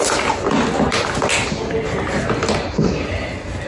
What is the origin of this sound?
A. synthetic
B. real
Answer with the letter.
B